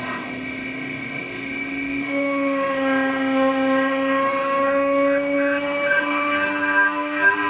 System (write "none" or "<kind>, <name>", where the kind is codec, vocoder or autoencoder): autoencoder, DAC-VAE